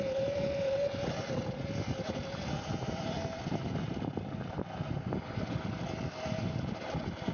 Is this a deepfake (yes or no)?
no